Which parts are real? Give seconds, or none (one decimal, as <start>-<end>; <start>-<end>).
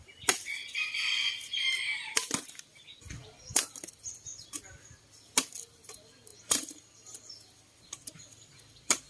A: 0.0-3.2; 3.9-6.3